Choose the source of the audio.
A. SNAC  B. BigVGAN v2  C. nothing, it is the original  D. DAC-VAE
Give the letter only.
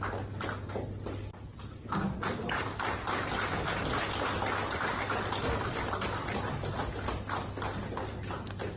C